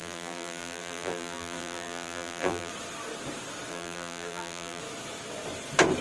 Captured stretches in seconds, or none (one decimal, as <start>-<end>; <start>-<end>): 2.7-3.7; 4.8-6.0